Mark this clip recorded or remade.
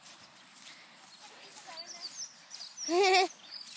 recorded